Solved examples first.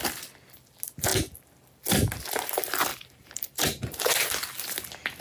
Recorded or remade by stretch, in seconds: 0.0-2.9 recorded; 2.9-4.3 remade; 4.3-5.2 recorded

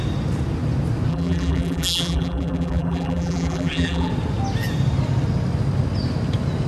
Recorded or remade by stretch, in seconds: 0.0-1.1 recorded; 1.1-4.1 remade; 4.1-6.7 recorded

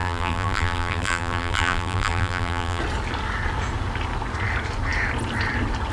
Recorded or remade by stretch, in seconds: 0.0-2.8 remade; 2.8-5.9 recorded

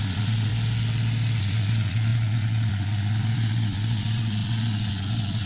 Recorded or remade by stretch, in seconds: 0.0-0.5 remade; 0.5-1.4 recorded; 1.4-5.5 remade

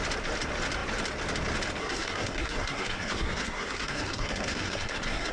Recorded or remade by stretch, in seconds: 0.0-1.8 recorded; 1.8-5.3 remade

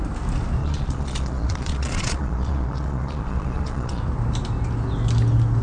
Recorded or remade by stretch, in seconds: 0.0-0.6 recorded; 0.6-4.0 remade; 4.0-5.6 recorded

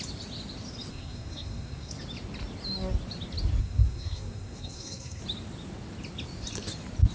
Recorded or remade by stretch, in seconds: 0.0-0.9 recorded; 0.9-1.9 remade; 1.9-3.6 recorded; 3.6-5.2 remade; 5.2-7.1 recorded